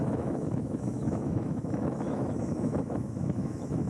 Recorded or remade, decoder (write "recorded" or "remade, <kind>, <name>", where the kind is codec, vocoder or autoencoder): remade, autoencoder, DAC-VAE